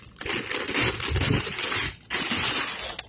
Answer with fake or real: real